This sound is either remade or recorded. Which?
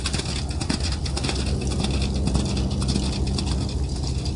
recorded